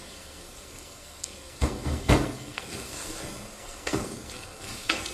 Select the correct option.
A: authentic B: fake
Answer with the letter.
B